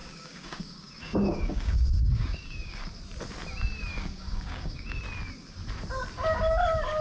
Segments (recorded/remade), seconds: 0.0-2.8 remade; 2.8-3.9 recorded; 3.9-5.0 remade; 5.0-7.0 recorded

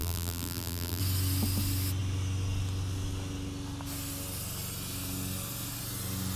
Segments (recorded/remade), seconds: 0.0-1.0 remade; 1.0-6.4 recorded

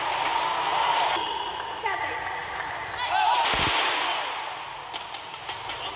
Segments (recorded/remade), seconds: 0.0-6.0 recorded

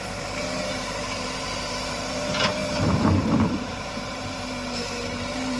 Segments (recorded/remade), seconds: 0.0-5.6 remade